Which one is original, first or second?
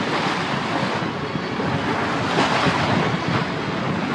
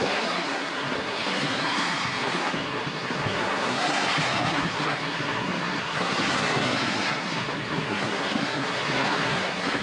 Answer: first